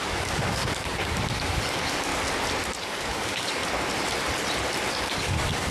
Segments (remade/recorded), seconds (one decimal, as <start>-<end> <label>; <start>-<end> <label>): 0.0-2.1 remade; 2.1-2.8 recorded; 2.8-3.6 remade; 3.6-4.9 recorded; 4.9-5.7 remade